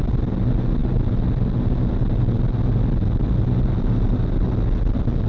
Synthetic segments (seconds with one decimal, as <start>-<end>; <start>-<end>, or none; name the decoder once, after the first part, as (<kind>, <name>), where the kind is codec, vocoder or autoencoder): none